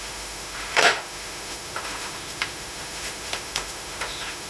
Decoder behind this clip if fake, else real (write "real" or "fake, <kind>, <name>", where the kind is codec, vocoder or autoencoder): fake, autoencoder, DAC-VAE